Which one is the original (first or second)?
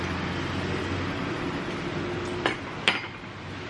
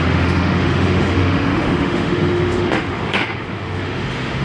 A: first